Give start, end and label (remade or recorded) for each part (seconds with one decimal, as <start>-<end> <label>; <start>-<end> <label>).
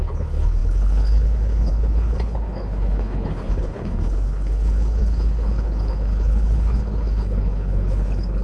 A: 0.0-8.4 remade